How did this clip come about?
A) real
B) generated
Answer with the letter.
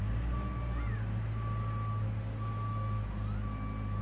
A